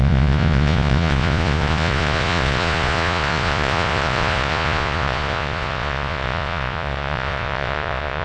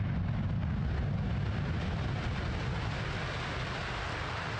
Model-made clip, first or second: first